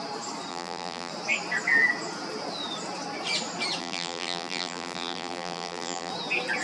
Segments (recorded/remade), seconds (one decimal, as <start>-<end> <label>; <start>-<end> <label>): 0.0-0.5 recorded; 0.5-1.1 remade; 1.1-3.8 recorded; 3.8-6.1 remade; 6.1-6.6 recorded